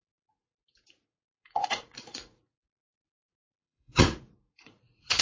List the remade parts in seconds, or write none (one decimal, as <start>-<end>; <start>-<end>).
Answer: 0.0-5.2